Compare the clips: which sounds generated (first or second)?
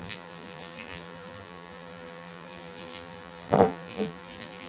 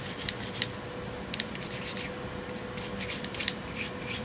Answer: first